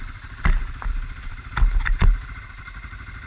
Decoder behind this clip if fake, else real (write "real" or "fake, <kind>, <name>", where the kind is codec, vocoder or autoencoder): real